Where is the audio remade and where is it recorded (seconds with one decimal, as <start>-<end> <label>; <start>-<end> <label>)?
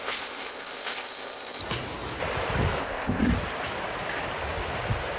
0.0-1.6 remade; 1.6-2.8 recorded; 2.8-3.2 remade; 3.2-5.2 recorded